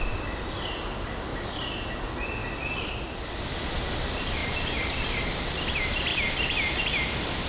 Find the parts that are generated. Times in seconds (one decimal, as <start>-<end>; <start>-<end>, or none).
1.3-1.9; 4.4-5.2; 6.1-6.8